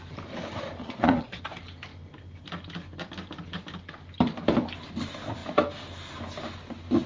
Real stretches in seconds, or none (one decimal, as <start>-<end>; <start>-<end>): 0.0-0.8; 1.4-7.1